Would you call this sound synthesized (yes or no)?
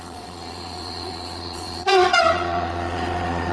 yes